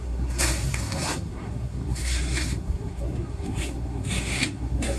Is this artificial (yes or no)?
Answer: yes